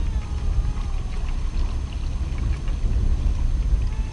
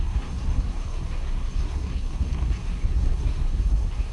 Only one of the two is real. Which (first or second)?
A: first